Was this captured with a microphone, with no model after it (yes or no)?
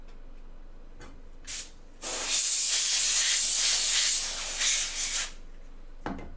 yes